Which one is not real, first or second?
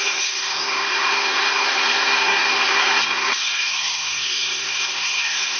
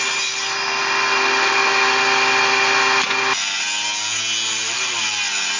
first